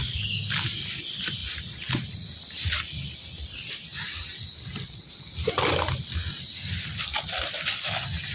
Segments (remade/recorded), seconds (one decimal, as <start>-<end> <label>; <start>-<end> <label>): 0.0-8.3 recorded